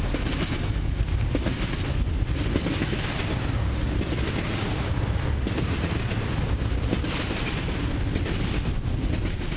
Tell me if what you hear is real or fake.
real